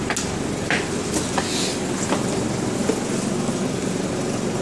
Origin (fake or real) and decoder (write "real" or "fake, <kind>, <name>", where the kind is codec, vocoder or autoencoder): real